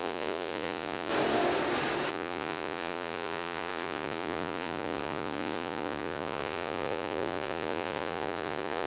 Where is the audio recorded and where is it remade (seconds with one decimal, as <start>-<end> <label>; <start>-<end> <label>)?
0.0-1.1 remade; 1.1-2.1 recorded; 2.1-8.9 remade